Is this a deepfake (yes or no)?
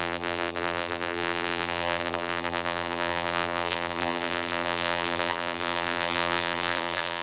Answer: yes